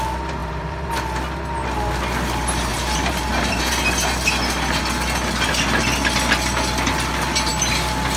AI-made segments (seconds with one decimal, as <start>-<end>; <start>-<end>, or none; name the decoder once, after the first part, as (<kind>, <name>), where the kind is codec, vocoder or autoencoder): 0.4-0.9 (vocoder, BigVGAN v2); 2.7-3.6